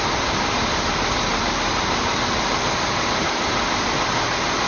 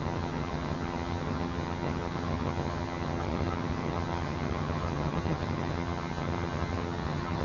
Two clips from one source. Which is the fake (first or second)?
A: second